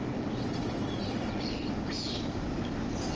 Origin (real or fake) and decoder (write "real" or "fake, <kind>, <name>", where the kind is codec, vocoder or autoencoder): real